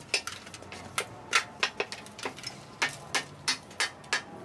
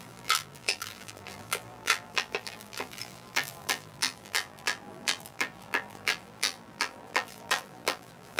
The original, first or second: first